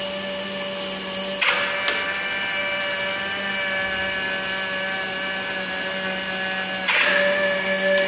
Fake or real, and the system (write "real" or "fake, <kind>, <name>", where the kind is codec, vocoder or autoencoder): real